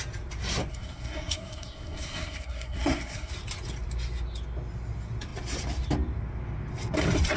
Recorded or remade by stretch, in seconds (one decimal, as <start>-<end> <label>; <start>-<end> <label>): 0.0-0.7 recorded; 0.7-3.3 remade; 3.3-7.4 recorded